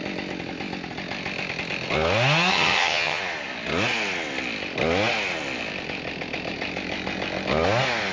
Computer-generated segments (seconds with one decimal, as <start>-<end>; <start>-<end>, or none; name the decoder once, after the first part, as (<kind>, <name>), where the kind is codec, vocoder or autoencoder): 2.5-3.2 (vocoder, HiFi-GAN)